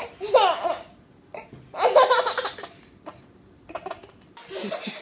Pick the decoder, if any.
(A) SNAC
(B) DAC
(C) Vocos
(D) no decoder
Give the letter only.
D